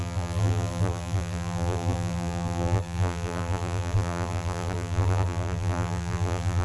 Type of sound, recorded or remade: remade